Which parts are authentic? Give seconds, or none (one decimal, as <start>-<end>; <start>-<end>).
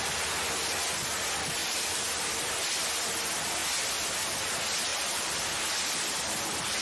0.0-1.6; 2.5-4.9; 5.6-6.8